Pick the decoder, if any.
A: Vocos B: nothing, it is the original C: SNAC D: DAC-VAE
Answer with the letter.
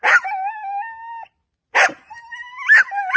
B